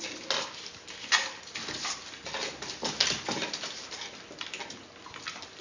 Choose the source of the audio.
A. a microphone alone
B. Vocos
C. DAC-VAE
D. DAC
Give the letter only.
A